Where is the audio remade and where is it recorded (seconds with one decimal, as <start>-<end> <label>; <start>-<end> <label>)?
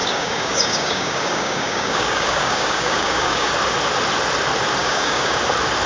0.0-3.5 remade; 3.5-4.8 recorded; 4.8-5.4 remade; 5.4-5.9 recorded